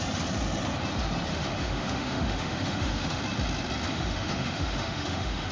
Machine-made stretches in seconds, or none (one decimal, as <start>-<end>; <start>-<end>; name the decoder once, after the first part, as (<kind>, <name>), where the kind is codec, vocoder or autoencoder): 1.3-3.2 (autoencoder, DAC-VAE); 3.9-5.5